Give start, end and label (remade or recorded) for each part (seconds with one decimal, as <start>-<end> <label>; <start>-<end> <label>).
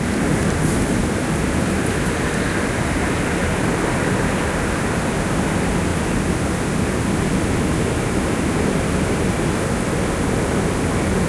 0.0-11.3 recorded